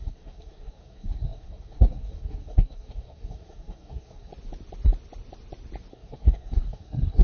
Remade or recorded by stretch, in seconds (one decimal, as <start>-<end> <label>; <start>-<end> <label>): 0.0-4.3 remade; 4.3-5.9 recorded; 5.9-7.2 remade